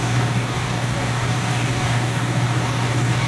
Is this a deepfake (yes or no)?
yes